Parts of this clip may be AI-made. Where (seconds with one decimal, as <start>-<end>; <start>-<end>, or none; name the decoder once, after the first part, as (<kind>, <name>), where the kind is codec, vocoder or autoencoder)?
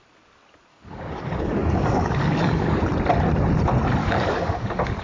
0.7-2.8 (codec, DAC); 4.0-5.0